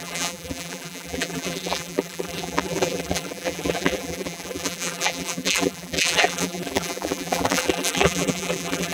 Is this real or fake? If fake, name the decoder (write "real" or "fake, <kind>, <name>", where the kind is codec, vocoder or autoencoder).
fake, vocoder, BigVGAN v2